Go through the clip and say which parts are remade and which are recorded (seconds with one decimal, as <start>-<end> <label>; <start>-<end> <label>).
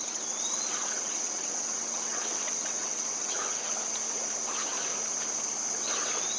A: 0.0-0.8 recorded; 0.8-3.7 remade; 3.7-6.4 recorded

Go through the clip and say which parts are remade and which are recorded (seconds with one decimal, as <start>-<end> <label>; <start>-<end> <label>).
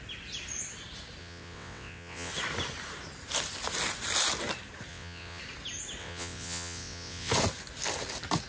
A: 0.0-1.2 recorded; 1.2-2.3 remade; 2.3-4.9 recorded; 4.9-5.4 remade; 5.4-6.0 recorded; 6.0-7.3 remade; 7.3-8.5 recorded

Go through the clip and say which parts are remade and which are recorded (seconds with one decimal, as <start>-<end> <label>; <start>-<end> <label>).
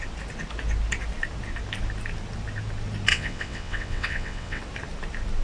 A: 0.0-3.1 recorded; 3.1-4.6 remade; 4.6-5.4 recorded